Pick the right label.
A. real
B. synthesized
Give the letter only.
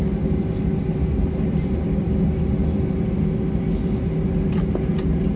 A